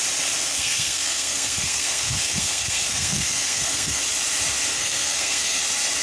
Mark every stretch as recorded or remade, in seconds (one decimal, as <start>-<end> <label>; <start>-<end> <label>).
0.0-0.4 recorded; 0.4-4.0 remade; 4.0-4.7 recorded; 4.7-5.6 remade; 5.6-6.0 recorded